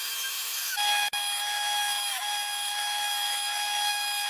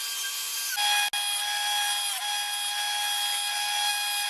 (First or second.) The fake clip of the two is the first